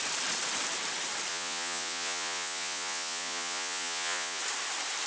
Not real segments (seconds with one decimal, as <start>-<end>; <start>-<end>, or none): 1.3-4.4